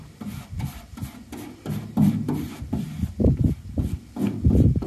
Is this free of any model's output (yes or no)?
yes